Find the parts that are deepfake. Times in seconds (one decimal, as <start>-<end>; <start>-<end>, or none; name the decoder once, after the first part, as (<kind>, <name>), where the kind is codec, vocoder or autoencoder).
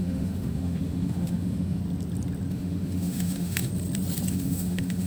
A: 0.0-1.8 (autoencoder, DAC-VAE); 2.5-3.7; 4.3-5.1